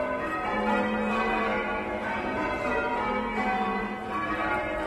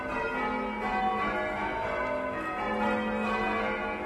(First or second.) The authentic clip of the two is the second